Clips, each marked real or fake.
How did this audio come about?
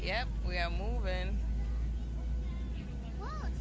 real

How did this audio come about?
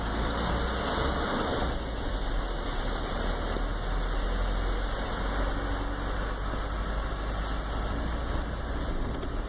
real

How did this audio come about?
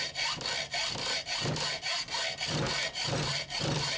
real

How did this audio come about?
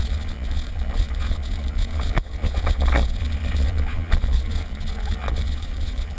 fake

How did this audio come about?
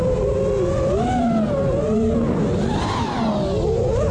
real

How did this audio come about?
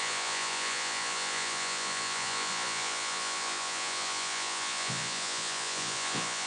fake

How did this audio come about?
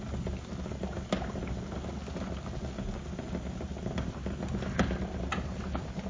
real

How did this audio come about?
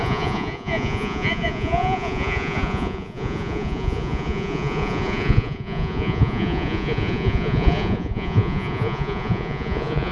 fake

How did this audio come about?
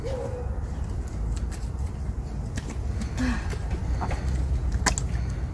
real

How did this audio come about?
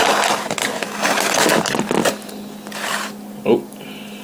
real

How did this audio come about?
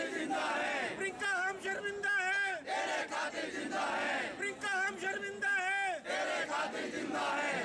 real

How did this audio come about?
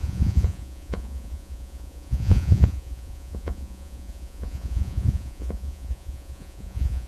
fake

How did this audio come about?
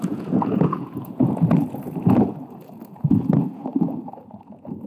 fake